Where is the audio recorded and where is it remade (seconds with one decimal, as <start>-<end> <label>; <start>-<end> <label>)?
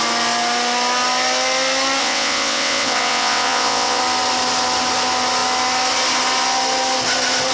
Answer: 0.0-2.0 recorded; 2.0-4.0 remade; 4.0-7.5 recorded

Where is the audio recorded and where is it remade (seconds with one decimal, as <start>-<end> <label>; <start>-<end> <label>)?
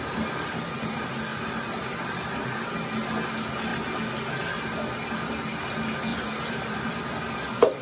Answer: 0.0-1.3 recorded; 1.3-2.6 remade; 2.6-6.1 recorded; 6.1-6.9 remade; 6.9-7.8 recorded